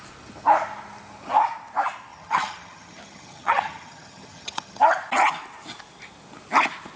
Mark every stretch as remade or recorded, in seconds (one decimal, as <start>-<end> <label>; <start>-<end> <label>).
0.0-2.1 recorded; 2.1-4.8 remade; 4.8-7.0 recorded